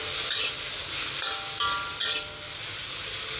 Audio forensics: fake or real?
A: real